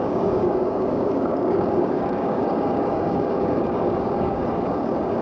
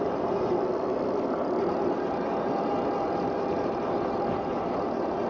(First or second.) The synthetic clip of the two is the first